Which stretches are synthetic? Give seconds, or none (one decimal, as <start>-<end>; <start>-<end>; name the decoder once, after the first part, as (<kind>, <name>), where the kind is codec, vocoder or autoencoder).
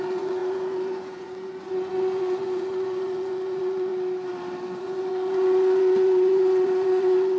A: 0.0-3.9 (vocoder, Vocos); 4.8-7.4